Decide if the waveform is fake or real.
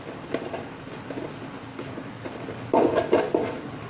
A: real